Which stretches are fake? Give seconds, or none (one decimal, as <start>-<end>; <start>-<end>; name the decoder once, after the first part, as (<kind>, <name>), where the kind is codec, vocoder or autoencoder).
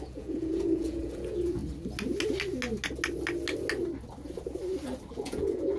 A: 0.0-1.6 (vocoder, Vocos); 5.1-5.8